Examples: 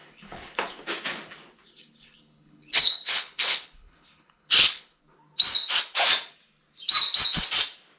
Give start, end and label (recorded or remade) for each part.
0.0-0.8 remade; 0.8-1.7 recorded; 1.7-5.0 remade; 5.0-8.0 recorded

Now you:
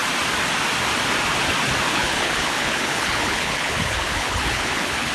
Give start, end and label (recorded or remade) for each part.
0.0-1.9 recorded; 1.9-5.1 remade

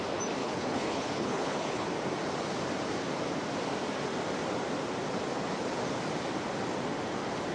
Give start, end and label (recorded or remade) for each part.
0.0-0.4 recorded; 0.4-1.9 remade; 1.9-7.5 recorded

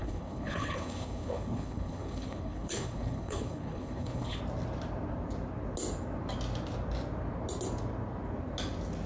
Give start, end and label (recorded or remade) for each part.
0.0-4.4 remade; 4.4-9.1 recorded